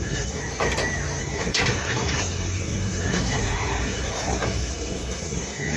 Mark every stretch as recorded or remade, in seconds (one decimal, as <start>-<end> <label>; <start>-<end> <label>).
0.0-0.4 remade; 0.4-1.2 recorded; 1.2-5.8 remade